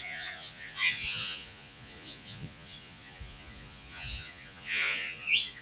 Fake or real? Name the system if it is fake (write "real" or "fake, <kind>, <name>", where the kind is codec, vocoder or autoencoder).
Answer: fake, vocoder, Vocos